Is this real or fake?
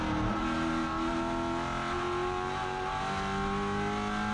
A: real